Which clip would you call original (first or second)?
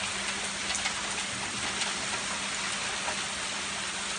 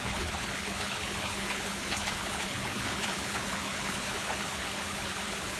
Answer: first